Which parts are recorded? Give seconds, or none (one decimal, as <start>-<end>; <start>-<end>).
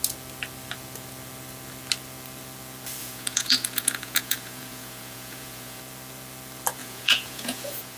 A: 0.0-3.0; 5.8-6.8